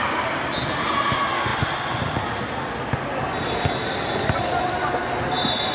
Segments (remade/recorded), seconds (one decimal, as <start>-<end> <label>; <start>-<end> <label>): 0.0-5.7 recorded